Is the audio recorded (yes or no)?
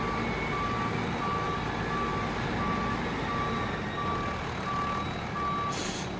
yes